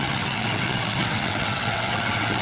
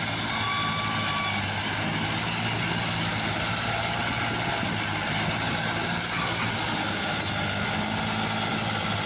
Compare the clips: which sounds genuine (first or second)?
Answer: second